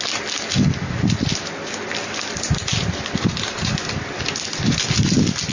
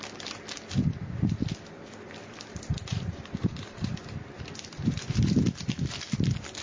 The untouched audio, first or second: first